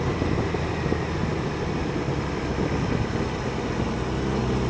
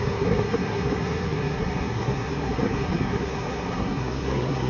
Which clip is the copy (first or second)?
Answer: second